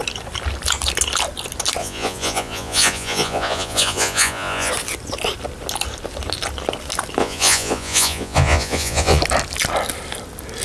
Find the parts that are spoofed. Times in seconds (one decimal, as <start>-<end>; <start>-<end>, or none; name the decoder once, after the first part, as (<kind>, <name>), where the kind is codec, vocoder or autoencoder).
1.8-4.7 (vocoder, Vocos); 7.2-9.2

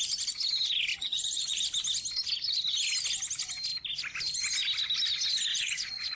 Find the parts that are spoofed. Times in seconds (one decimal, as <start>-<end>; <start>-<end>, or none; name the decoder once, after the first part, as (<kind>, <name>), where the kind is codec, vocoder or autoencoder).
0.9-1.6 (vocoder, Vocos); 5.5-6.2

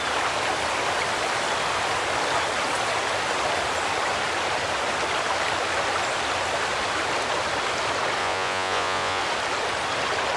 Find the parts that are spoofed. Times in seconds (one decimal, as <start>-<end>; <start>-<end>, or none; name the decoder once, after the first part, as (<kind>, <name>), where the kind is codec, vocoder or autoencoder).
8.2-9.2 (vocoder, Vocos)